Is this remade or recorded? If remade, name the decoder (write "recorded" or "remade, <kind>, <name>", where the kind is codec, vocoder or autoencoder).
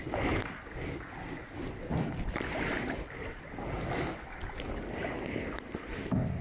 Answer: recorded